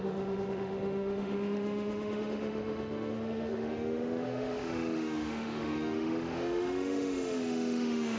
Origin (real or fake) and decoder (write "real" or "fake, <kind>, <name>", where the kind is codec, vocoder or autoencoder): fake, autoencoder, DAC-VAE